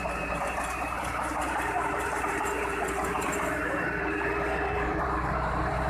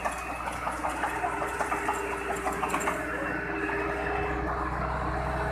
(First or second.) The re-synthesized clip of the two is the first